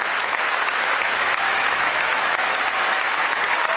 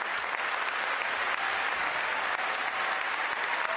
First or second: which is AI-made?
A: first